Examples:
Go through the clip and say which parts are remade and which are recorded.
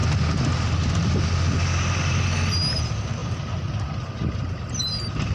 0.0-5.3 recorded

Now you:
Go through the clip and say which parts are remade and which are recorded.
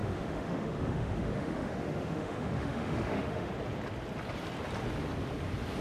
0.0-3.5 remade; 3.5-5.8 recorded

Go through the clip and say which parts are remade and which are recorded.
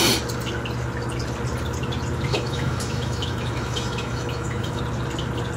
0.0-2.3 recorded; 2.3-4.8 remade; 4.8-5.6 recorded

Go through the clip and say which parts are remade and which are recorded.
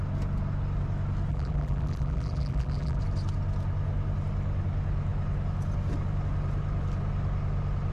0.0-1.3 recorded; 1.3-3.0 remade; 3.0-7.9 recorded